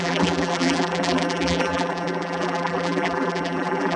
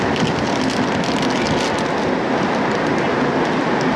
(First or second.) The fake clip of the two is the first